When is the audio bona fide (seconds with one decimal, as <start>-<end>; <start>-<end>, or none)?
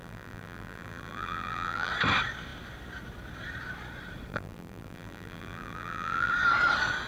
1.9-4.3; 6.3-7.1